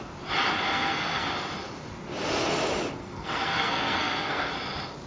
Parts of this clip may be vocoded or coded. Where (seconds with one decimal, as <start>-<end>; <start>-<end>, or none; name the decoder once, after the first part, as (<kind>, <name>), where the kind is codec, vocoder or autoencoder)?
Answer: 0.7-1.3 (codec, SNAC); 3.0-4.5